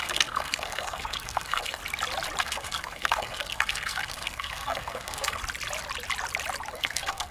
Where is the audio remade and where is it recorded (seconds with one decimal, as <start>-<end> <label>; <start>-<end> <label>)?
0.0-1.8 remade; 1.8-2.4 recorded; 2.4-5.4 remade; 5.4-6.7 recorded; 6.7-7.3 remade